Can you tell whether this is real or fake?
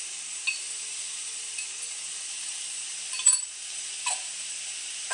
fake